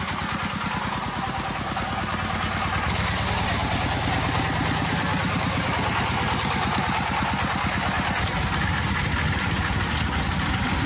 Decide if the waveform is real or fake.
real